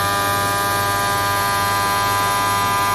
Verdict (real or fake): real